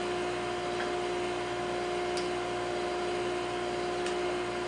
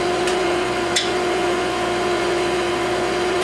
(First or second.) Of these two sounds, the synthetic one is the second